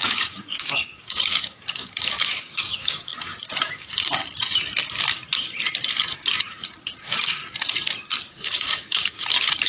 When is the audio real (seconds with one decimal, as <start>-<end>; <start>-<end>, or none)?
3.1-3.6; 4.2-7.0; 7.4-8.3